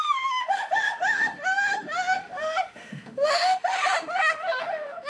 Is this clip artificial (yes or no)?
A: yes